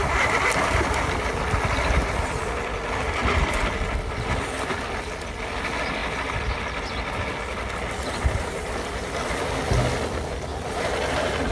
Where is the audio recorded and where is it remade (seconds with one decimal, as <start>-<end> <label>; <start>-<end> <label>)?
0.0-11.5 recorded